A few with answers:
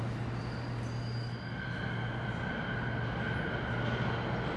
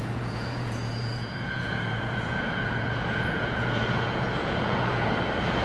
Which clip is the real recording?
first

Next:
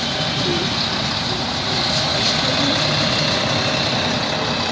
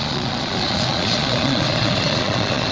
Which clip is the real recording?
first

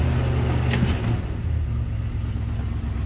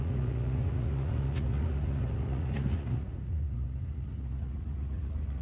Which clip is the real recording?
first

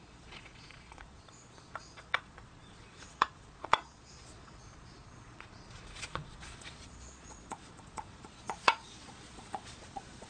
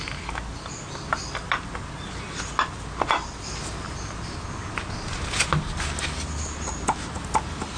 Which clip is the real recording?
second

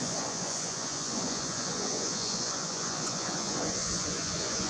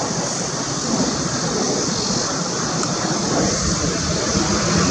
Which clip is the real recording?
second